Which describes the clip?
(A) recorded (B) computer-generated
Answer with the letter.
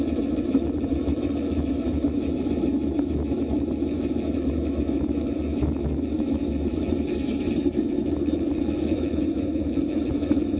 B